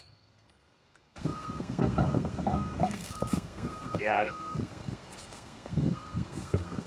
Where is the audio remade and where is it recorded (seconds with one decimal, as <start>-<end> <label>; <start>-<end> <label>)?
0.0-6.9 remade